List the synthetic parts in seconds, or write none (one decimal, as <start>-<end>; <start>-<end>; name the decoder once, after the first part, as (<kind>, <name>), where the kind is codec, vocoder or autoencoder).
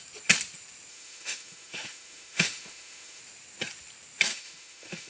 0.9-3.2 (autoencoder, DAC-VAE); 4.3-5.1